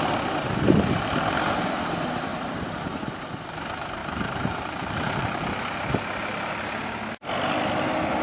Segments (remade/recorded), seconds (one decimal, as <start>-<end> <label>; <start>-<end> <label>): 0.0-2.3 recorded; 2.3-3.1 remade; 3.1-4.0 recorded; 4.0-5.5 remade; 5.5-8.2 recorded